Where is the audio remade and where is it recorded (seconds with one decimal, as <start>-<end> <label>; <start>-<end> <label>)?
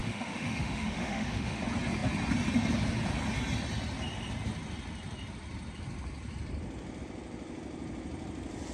0.0-1.6 remade; 1.6-8.7 recorded